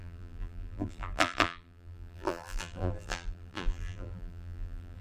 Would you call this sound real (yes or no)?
no